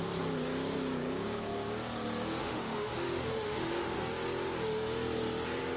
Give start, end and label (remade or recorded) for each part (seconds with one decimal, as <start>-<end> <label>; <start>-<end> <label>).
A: 0.0-2.4 recorded; 2.4-4.0 remade; 4.0-5.8 recorded